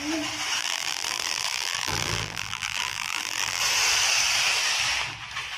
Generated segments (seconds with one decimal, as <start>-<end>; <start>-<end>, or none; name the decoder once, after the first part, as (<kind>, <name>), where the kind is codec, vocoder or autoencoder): 0.6-3.6 (vocoder, BigVGAN v2)